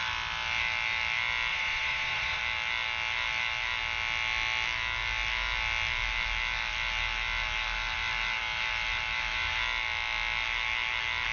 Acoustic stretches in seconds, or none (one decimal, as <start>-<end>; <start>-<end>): 0.0-1.5; 2.4-11.3